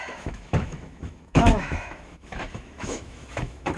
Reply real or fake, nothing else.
fake